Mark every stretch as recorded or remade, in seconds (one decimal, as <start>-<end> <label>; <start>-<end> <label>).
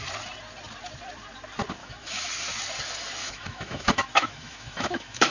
0.0-1.8 recorded; 1.8-2.3 remade; 2.3-3.2 recorded; 3.2-5.3 remade